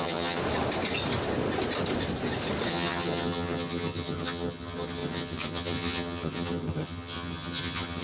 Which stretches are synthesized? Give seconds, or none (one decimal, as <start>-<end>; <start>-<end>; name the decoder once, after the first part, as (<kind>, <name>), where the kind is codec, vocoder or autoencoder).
0.0-0.4 (vocoder, HiFi-GAN); 2.7-8.0